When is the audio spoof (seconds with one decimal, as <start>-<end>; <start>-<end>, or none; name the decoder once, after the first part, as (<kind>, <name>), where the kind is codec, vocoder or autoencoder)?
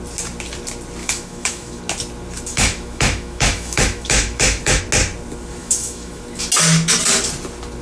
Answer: 1.0-1.8 (autoencoder, DAC-VAE); 2.5-4.8; 5.6-6.2